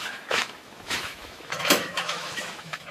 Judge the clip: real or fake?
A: fake